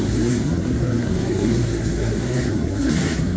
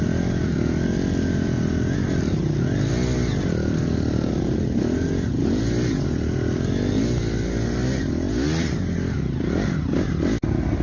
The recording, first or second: second